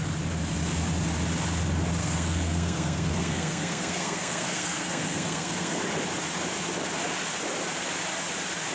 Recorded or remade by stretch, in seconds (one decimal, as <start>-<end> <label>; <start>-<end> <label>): 0.0-2.0 recorded; 2.0-5.8 remade; 5.8-8.7 recorded